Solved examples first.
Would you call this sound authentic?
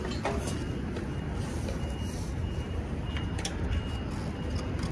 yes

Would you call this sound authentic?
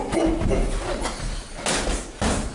yes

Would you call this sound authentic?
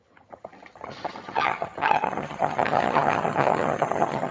no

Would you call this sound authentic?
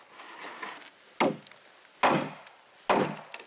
yes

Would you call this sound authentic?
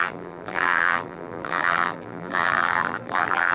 no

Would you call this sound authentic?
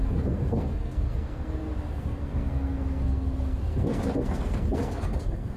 no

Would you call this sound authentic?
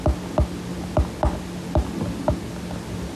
yes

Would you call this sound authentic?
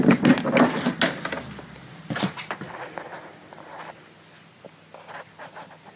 yes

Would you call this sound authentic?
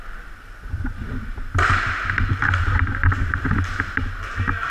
yes